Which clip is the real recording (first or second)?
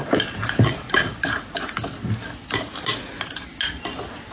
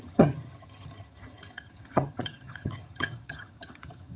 first